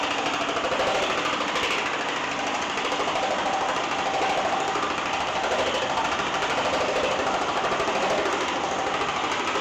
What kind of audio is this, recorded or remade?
recorded